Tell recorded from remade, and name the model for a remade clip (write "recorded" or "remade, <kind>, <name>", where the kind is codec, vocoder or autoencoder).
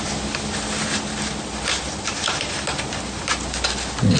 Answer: recorded